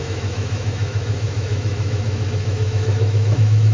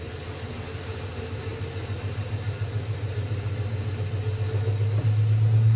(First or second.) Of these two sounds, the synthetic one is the first